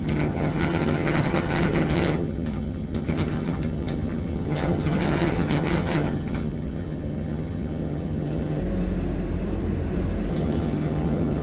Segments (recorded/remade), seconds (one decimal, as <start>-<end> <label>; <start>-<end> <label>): 0.0-8.6 remade; 8.6-10.3 recorded; 10.3-11.4 remade